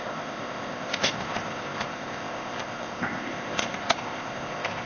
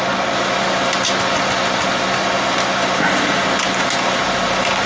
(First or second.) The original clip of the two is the second